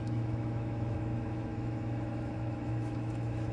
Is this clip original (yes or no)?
no